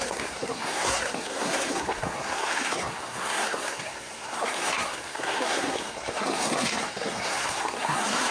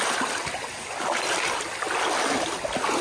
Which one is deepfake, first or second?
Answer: first